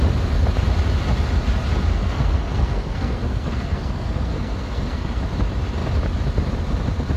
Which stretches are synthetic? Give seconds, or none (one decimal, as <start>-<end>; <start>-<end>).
1.9-5.2